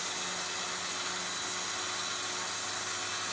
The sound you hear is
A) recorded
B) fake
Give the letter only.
A